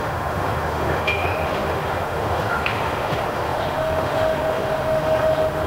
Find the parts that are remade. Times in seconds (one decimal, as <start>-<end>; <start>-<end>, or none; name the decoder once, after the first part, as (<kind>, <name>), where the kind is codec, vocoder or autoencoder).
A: 0.0-5.7 (autoencoder, DAC-VAE)